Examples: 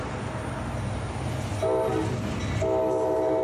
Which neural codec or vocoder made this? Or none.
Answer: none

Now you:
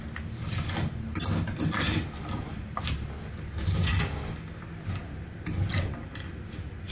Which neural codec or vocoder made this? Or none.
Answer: none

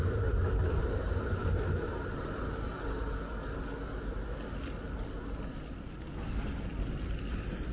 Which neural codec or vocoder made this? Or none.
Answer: none